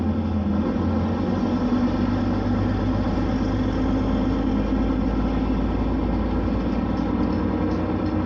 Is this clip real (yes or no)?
yes